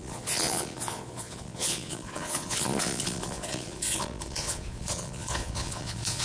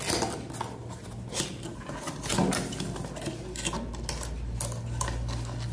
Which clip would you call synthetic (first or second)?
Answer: first